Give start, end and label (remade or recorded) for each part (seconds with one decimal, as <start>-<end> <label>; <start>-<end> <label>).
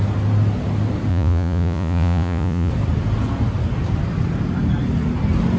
0.0-1.1 recorded; 1.1-2.7 remade; 2.7-5.6 recorded